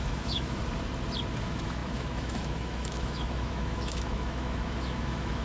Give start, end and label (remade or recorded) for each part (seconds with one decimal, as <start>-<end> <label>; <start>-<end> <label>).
0.0-0.6 remade; 0.6-1.4 recorded; 1.4-5.4 remade